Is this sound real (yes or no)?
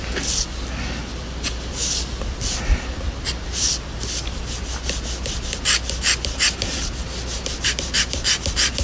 yes